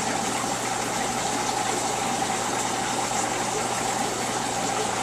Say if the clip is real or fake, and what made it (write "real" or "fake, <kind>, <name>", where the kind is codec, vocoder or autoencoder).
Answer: real